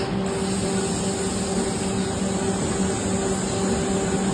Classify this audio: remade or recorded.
recorded